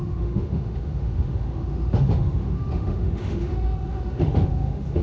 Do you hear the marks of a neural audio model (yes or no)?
yes